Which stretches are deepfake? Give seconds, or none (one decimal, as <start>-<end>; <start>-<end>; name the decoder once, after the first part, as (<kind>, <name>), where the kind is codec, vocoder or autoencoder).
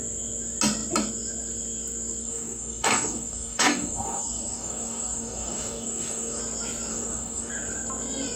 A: 2.2-6.4 (codec, DAC); 6.9-7.5